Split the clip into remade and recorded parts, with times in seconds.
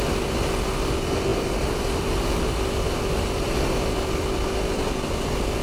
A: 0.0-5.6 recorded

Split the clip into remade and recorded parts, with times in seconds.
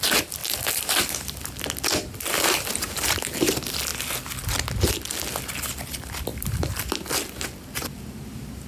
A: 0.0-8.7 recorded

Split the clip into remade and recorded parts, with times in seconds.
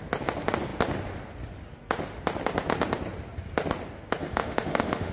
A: 0.0-4.2 recorded; 4.2-5.1 remade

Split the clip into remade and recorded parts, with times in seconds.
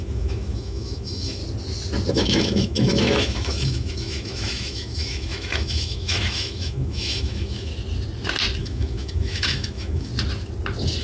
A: 0.0-1.4 remade; 1.4-2.1 recorded; 2.1-7.7 remade; 7.7-8.6 recorded; 8.6-10.1 remade; 10.1-11.0 recorded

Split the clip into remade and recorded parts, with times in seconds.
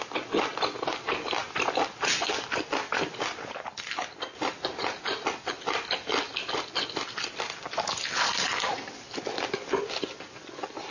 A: 0.0-10.9 recorded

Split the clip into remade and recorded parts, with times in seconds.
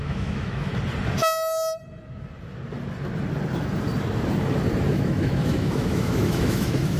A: 0.0-0.7 remade; 0.7-4.9 recorded; 4.9-7.0 remade